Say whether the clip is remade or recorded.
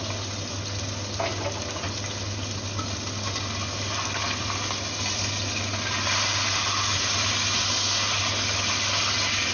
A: recorded